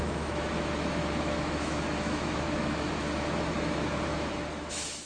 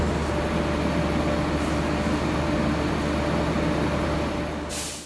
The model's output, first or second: first